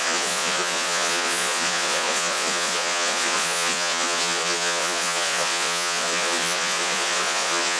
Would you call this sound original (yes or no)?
no